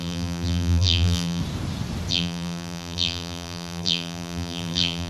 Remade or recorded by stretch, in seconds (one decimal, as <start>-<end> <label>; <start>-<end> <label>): 0.0-1.4 remade; 1.4-2.1 recorded; 2.1-5.1 remade